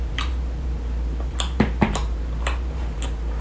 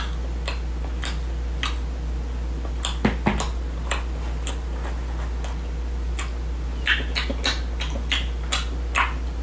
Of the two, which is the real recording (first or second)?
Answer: second